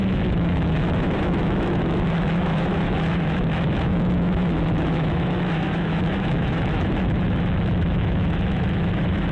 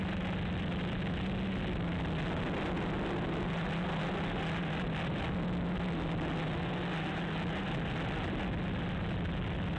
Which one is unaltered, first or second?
second